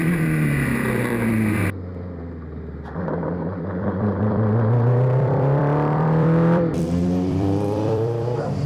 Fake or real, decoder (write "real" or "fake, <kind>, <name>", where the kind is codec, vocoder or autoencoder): fake, vocoder, BigVGAN v2